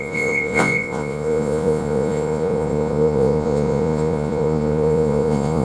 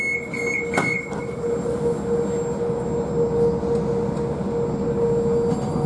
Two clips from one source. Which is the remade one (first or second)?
first